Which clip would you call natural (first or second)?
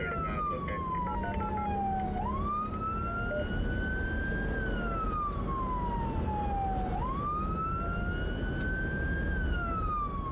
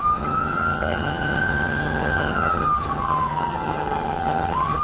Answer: first